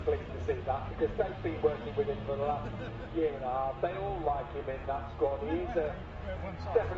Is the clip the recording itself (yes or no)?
yes